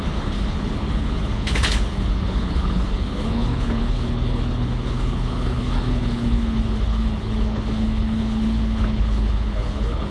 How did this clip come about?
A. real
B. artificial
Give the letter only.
B